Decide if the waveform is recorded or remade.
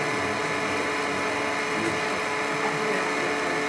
recorded